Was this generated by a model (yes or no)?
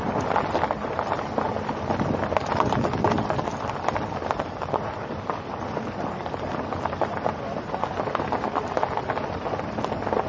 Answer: no